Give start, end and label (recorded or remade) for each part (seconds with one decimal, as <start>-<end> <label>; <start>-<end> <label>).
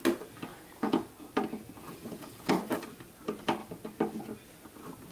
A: 0.0-0.5 recorded; 0.5-1.1 remade; 1.1-1.8 recorded; 1.8-2.5 remade; 2.5-5.1 recorded